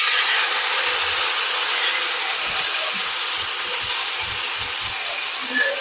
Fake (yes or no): no